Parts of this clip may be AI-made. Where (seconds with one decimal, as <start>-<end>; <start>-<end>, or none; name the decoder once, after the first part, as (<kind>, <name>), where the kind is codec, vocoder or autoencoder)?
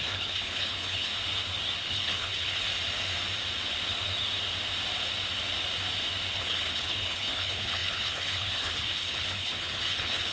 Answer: 0.0-1.1 (codec, HILCodec); 1.9-2.7; 6.3-10.3